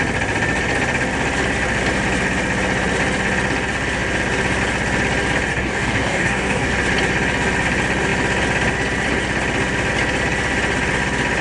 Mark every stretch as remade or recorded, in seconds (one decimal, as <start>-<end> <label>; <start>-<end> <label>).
0.0-5.5 recorded; 5.5-6.7 remade; 6.7-11.4 recorded